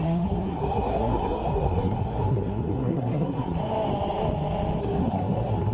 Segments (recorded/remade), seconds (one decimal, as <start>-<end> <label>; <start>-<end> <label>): 0.0-3.6 remade; 3.6-4.8 recorded; 4.8-5.7 remade